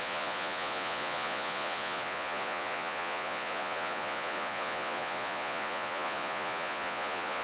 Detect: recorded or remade remade